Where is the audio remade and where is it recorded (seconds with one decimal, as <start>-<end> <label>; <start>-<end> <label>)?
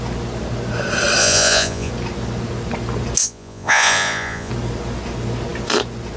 0.0-1.2 recorded; 1.2-1.9 remade; 1.9-3.2 recorded; 3.2-4.5 remade; 4.5-6.2 recorded